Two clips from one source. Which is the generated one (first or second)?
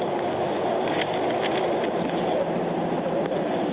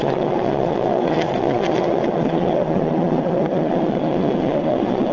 second